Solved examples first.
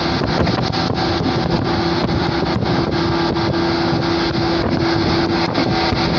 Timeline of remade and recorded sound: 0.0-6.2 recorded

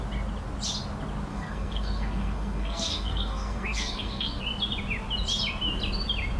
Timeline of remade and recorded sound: 0.0-1.3 recorded; 1.3-4.4 remade; 4.4-6.4 recorded

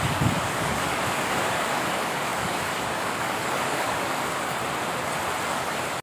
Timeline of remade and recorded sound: 0.0-4.6 remade; 4.6-5.5 recorded; 5.5-6.0 remade

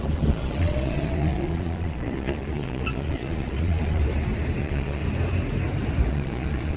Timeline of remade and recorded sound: 0.0-4.0 remade; 4.0-4.6 recorded; 4.6-5.0 remade; 5.0-6.1 recorded; 6.1-6.8 remade

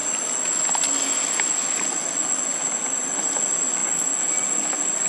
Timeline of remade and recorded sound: 0.0-5.1 recorded